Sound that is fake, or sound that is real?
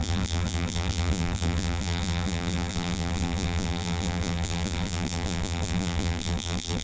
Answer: fake